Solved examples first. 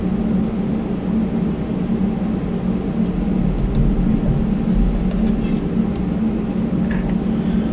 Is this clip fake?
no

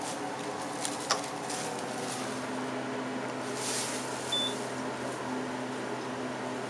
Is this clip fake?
no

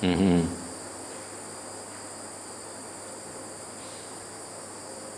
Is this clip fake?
no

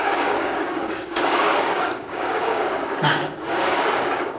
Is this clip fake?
yes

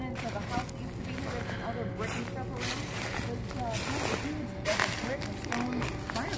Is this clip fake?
no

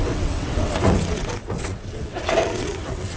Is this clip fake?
yes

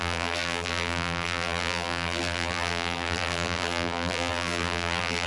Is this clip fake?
yes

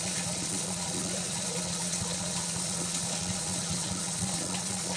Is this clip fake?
yes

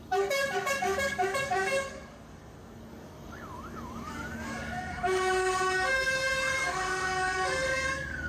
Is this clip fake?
yes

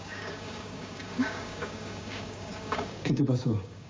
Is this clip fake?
yes